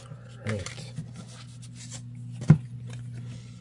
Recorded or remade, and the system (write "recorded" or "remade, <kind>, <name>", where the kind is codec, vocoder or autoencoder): recorded